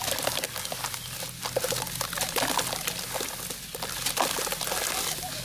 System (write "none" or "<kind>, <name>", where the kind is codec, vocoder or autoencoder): none